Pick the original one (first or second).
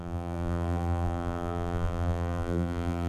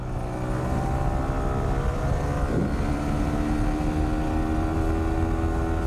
second